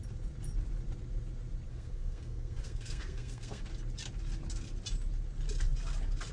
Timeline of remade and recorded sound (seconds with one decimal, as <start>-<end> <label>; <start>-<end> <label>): 0.0-1.7 recorded; 1.7-3.6 remade; 3.6-6.3 recorded